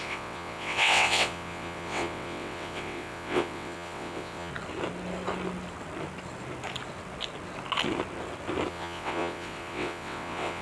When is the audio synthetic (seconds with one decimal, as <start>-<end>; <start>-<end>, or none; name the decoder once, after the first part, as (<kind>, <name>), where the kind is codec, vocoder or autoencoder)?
0.0-4.5 (vocoder, WaveNeXt); 8.7-10.6